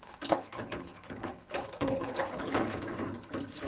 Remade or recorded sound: remade